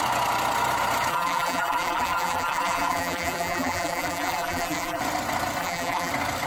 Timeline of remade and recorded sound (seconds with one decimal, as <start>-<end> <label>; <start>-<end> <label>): 0.0-1.1 recorded; 1.1-5.0 remade; 5.0-5.6 recorded; 5.6-6.1 remade; 6.1-6.5 recorded